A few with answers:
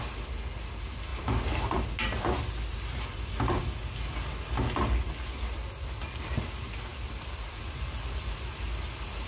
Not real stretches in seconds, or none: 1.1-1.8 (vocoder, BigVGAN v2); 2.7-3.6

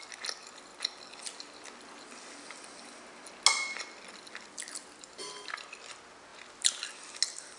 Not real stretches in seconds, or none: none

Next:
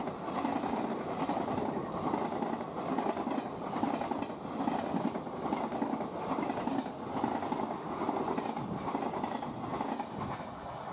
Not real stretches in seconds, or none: none